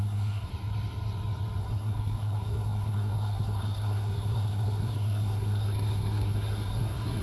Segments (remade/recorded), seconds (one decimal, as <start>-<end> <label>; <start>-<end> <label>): 0.0-0.5 remade; 0.5-1.6 recorded; 1.6-7.2 remade